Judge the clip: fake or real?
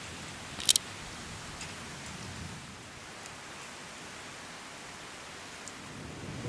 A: real